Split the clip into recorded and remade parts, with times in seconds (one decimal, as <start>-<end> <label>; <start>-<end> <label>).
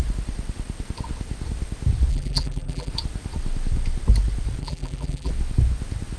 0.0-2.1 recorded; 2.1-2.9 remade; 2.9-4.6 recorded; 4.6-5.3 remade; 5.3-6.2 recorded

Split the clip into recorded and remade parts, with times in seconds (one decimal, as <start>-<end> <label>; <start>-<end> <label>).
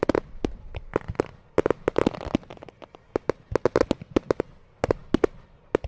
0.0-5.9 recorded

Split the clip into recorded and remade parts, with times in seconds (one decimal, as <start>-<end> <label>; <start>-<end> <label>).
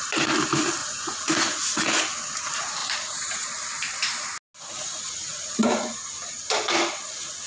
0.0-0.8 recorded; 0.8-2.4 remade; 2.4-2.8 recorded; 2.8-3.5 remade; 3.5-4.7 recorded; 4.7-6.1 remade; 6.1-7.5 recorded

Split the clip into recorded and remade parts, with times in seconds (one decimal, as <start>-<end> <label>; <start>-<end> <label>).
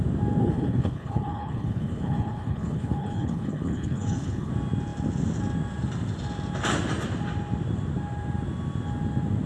0.0-0.4 recorded; 0.4-4.5 remade; 4.5-9.5 recorded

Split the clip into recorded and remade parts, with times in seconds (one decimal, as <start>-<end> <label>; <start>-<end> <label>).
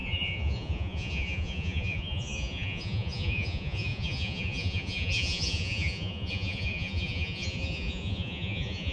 0.0-8.9 remade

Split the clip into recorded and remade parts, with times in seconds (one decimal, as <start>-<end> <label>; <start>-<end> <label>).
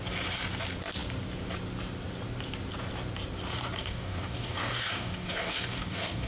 0.0-3.8 recorded; 3.8-6.3 remade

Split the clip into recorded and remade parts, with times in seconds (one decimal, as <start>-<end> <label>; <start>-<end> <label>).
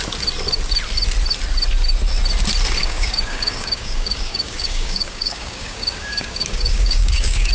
0.0-2.8 recorded; 2.8-7.5 remade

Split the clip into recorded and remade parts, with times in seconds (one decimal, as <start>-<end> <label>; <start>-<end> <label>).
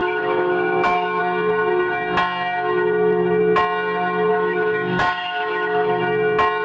0.0-1.2 remade; 1.2-4.3 recorded; 4.3-6.0 remade; 6.0-6.6 recorded